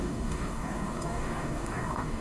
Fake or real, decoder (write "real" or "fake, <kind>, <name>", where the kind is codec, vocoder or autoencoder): fake, codec, DAC